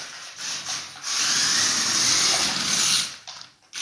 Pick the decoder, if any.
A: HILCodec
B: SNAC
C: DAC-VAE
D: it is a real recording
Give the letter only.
D